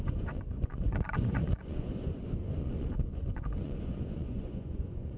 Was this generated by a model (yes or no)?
yes